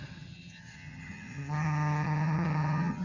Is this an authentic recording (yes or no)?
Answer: no